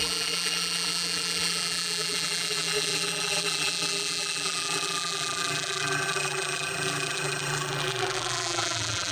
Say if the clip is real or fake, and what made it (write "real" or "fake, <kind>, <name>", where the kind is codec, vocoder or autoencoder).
fake, vocoder, BigVGAN v2